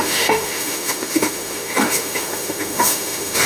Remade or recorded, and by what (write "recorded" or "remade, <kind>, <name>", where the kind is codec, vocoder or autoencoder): remade, autoencoder, DAC-VAE